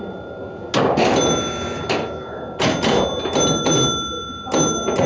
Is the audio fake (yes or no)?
no